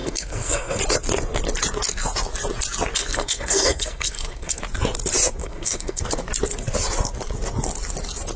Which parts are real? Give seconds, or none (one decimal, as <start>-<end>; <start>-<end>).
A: 0.8-3.0; 4.6-5.4; 6.0-8.4